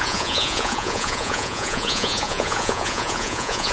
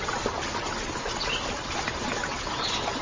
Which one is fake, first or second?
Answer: first